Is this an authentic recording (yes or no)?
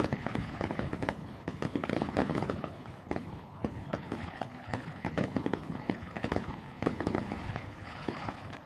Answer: no